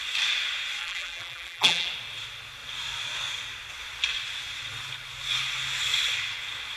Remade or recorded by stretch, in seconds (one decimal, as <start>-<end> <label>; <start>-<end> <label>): 0.0-0.8 recorded; 0.8-1.9 remade; 1.9-6.8 recorded